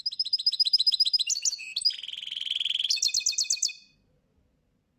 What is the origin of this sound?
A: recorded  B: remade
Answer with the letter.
A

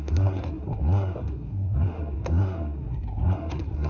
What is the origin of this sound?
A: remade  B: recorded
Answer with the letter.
A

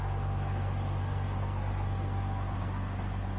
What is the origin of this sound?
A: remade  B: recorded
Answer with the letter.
A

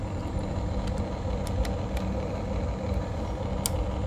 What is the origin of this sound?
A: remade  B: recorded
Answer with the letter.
B